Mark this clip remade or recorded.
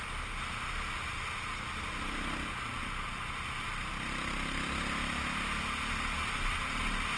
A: recorded